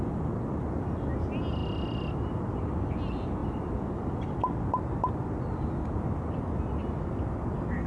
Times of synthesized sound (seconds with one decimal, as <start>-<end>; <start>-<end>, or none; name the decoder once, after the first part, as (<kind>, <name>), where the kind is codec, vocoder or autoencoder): none